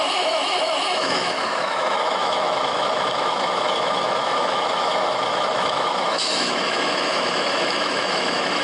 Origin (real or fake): fake